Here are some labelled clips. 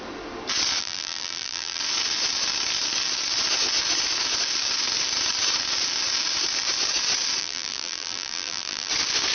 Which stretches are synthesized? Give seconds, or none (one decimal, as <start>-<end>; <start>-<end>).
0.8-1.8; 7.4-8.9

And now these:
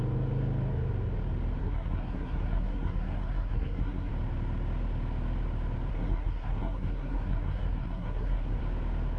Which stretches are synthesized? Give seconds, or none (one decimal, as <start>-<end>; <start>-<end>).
1.6-4.1; 5.9-8.6

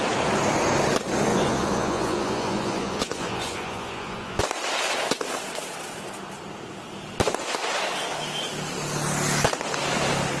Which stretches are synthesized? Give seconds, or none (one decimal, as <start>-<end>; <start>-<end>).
1.3-4.4